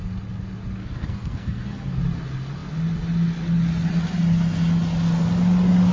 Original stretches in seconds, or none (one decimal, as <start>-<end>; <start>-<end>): 0.0-0.8; 2.0-5.9